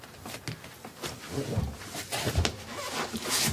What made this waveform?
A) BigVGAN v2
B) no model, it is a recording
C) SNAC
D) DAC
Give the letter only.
B